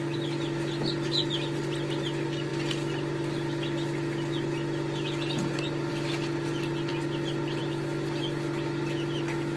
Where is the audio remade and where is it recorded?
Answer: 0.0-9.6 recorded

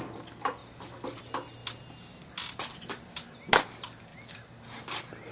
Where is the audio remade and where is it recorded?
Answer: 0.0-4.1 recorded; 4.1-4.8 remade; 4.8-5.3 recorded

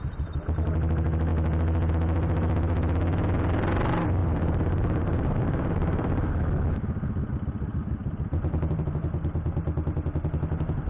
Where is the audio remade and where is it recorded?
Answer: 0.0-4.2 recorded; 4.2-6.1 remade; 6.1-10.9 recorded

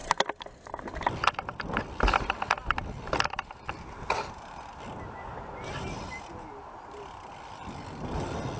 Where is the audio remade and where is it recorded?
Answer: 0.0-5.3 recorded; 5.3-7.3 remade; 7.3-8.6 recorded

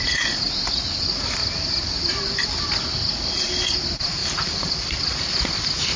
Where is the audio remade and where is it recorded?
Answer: 0.0-4.2 recorded; 4.2-4.7 remade; 4.7-6.0 recorded

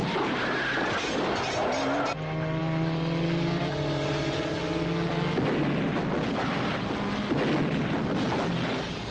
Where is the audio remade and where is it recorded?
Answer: 0.0-0.6 remade; 0.6-2.6 recorded; 2.6-4.6 remade; 4.6-5.1 recorded; 5.1-6.9 remade; 6.9-9.1 recorded